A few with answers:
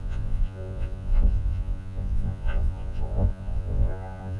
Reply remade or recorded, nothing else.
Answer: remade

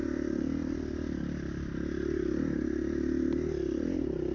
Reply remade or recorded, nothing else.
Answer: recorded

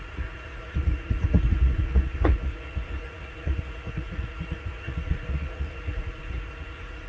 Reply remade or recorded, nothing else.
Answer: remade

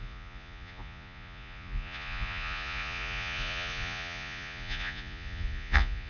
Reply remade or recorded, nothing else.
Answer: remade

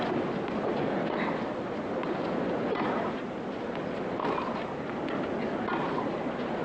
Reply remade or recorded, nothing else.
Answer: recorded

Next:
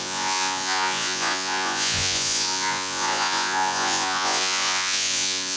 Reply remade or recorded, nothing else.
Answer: remade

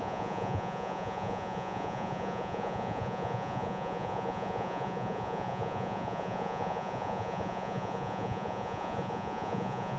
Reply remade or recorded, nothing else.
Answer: remade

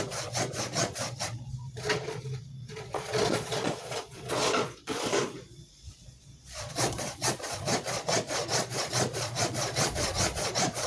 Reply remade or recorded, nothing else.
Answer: remade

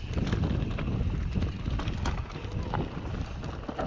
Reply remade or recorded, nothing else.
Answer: recorded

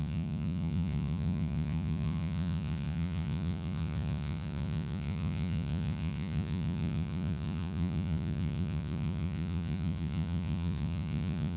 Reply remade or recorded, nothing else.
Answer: remade